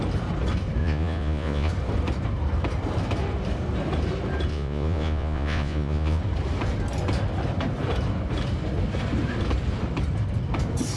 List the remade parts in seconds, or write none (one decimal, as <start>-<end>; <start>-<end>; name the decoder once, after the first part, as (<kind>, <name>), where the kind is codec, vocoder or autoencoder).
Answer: 0.8-1.7 (vocoder, Vocos); 4.5-6.2